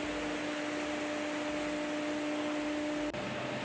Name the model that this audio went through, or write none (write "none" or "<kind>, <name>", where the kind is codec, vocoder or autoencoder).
none